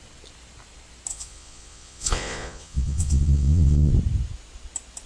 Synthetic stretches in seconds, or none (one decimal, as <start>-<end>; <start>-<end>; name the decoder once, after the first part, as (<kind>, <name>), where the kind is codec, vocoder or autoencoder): 1.1-3.9 (vocoder, Vocos)